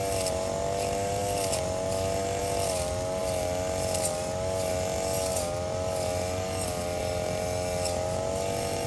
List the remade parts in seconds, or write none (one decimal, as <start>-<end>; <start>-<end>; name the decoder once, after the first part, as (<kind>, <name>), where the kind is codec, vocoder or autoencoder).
none